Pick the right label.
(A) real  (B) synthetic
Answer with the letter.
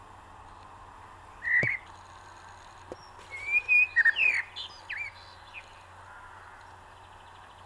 A